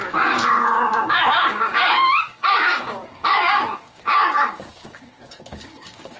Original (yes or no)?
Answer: no